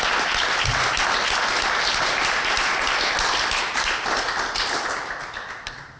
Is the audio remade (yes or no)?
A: no